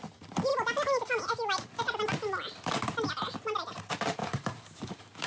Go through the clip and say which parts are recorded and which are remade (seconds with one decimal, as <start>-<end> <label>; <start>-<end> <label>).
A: 0.0-4.2 recorded; 4.2-5.3 remade